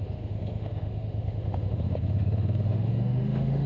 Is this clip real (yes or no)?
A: no